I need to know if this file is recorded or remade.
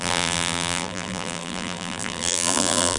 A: remade